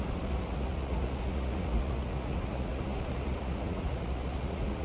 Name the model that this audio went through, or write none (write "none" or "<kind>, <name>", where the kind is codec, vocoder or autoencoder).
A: vocoder, Vocos